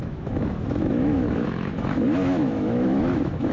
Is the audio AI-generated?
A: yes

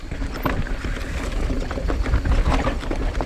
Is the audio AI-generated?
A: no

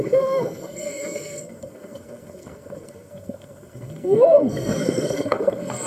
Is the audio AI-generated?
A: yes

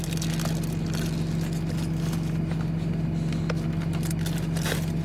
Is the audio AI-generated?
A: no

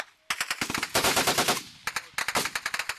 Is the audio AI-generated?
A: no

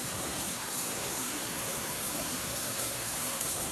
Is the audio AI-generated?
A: yes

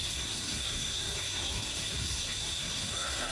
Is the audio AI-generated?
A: yes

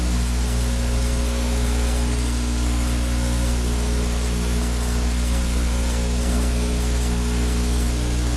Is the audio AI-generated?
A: yes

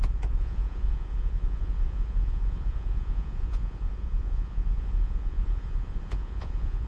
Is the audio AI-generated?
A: yes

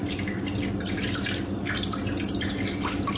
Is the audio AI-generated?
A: no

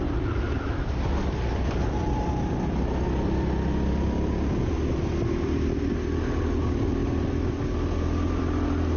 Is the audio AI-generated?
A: no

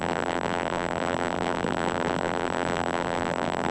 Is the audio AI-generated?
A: yes